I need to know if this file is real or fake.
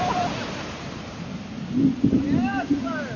real